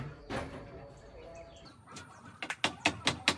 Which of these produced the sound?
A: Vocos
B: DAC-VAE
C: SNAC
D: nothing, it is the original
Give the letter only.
D